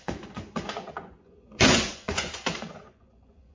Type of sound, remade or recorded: remade